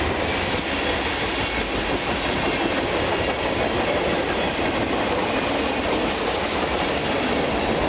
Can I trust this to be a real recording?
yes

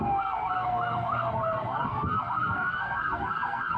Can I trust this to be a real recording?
no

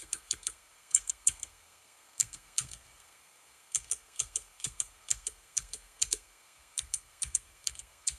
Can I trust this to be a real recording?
no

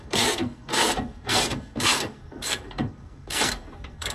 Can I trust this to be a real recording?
no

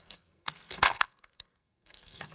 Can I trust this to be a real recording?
no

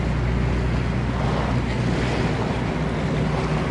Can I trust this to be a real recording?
yes